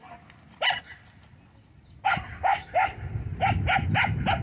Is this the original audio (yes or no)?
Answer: yes